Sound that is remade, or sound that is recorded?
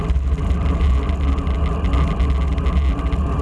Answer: recorded